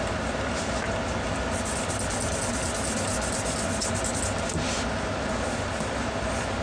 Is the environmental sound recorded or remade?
recorded